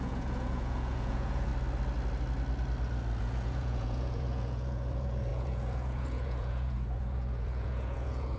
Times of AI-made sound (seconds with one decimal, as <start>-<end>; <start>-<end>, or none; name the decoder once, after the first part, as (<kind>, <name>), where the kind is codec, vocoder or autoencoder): 0.0-1.5 (vocoder, Vocos); 3.2-8.4